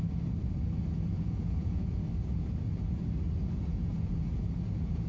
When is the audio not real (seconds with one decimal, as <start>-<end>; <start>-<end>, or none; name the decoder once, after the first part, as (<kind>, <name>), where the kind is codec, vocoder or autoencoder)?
1.1-2.0 (vocoder, Vocos); 3.4-5.1